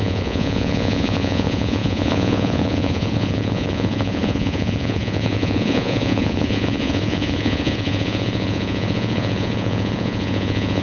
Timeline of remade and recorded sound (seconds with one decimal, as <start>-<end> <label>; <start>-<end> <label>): 0.0-10.8 remade